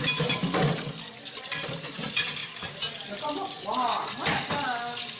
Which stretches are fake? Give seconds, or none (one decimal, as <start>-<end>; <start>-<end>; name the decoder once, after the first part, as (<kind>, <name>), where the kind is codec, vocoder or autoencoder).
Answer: none